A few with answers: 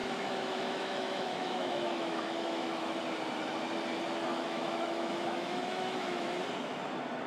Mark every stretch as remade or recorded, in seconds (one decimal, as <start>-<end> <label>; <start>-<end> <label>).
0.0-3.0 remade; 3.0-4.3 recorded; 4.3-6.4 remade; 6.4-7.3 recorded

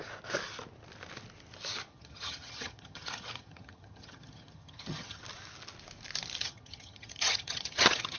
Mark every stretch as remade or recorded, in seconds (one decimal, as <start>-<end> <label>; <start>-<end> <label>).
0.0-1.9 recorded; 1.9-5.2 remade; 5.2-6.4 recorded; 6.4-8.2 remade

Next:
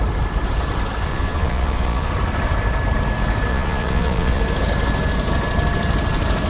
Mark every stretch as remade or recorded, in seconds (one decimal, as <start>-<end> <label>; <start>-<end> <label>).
0.0-1.1 recorded; 1.1-2.1 remade; 2.1-3.5 recorded; 3.5-4.4 remade; 4.4-6.5 recorded

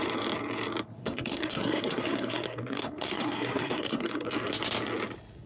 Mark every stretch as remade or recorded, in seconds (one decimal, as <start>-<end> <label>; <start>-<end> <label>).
0.0-1.0 recorded; 1.0-4.3 remade; 4.3-5.5 recorded

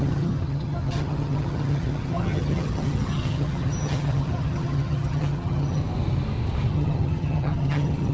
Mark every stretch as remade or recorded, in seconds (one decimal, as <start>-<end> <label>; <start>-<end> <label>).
0.0-5.8 remade; 5.8-6.7 recorded; 6.7-8.1 remade

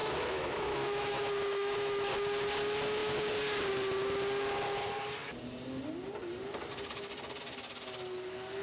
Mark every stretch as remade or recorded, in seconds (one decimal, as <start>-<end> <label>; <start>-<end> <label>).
0.0-2.1 remade; 2.1-8.6 recorded